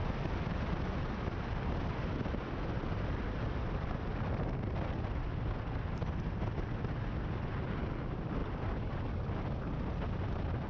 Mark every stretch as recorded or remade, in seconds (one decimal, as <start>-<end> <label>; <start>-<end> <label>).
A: 0.0-10.7 recorded